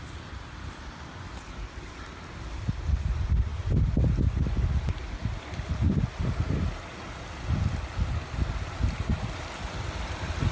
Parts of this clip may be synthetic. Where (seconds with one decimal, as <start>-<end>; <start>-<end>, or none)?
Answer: none